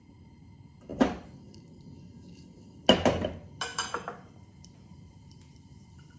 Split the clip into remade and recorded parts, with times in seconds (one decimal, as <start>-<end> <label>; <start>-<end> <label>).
0.0-0.9 recorded; 0.9-1.9 remade; 1.9-3.7 recorded; 3.7-6.2 remade